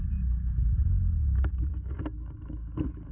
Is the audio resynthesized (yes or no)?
no